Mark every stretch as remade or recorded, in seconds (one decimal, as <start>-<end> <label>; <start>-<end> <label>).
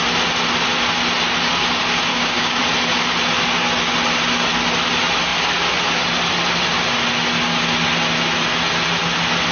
0.0-2.1 recorded; 2.1-2.6 remade; 2.6-9.5 recorded